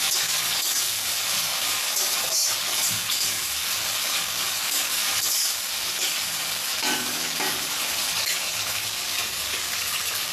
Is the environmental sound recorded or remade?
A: remade